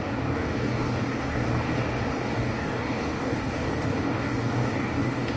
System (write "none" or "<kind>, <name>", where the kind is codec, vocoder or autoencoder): codec, DAC